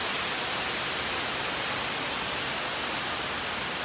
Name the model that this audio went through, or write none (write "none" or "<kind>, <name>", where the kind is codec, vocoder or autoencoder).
none